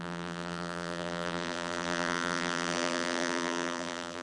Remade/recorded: remade